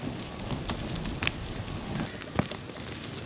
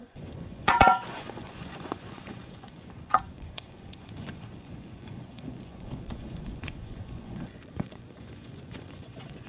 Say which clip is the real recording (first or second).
first